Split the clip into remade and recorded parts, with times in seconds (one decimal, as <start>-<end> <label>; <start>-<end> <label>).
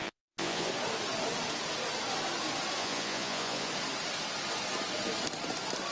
0.0-0.7 remade; 0.7-2.8 recorded; 2.8-3.7 remade; 3.7-5.9 recorded